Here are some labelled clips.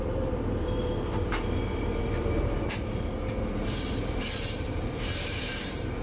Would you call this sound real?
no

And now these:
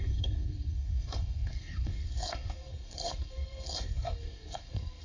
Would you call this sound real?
no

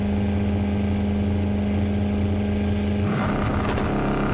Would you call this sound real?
yes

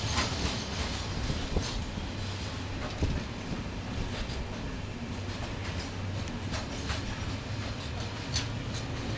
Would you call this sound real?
yes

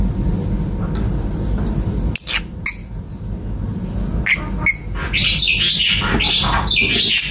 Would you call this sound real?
yes